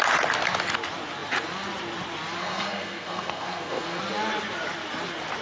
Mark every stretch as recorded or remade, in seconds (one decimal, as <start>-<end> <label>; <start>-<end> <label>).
0.0-2.4 recorded; 2.4-4.0 remade; 4.0-5.4 recorded